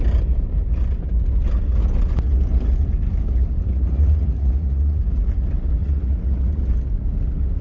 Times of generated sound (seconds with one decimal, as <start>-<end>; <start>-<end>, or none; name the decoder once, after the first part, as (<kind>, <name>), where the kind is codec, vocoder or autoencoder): 3.7-5.0 (vocoder, Vocos); 5.8-6.7